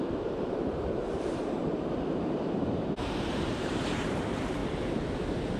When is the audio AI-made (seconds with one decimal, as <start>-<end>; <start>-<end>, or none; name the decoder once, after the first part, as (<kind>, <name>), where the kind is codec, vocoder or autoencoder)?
0.0-4.6 (vocoder, BigVGAN v2)

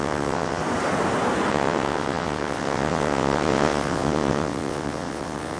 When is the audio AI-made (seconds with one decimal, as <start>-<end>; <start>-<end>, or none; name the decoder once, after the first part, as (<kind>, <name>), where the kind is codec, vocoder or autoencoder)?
0.0-0.6 (vocoder, WaveNeXt); 1.5-5.6

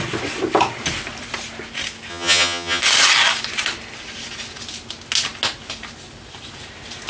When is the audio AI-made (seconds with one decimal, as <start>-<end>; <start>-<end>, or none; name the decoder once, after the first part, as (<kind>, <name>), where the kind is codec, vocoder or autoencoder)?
2.1-2.8 (vocoder, HiFi-GAN)

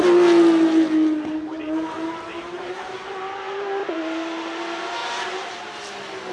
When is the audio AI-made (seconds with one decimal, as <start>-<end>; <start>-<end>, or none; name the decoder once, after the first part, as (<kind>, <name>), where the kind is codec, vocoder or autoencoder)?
1.5-2.9 (vocoder, BigVGAN v2); 5.0-6.3

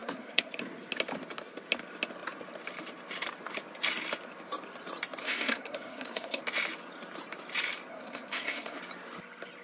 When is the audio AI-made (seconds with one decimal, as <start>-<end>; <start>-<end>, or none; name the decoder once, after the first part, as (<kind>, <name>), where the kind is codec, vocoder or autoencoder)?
0.0-0.5 (codec, SNAC); 5.2-6.4; 7.9-8.8

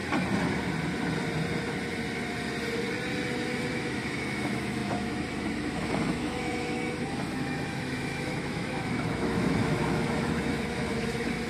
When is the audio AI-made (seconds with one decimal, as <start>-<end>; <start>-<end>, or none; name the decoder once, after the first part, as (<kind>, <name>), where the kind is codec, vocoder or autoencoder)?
3.7-11.5 (autoencoder, DAC-VAE)

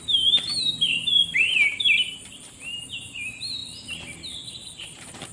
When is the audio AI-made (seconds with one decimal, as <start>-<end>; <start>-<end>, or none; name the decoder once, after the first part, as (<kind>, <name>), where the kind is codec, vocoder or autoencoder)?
0.0-3.6 (vocoder, BigVGAN v2); 4.5-5.3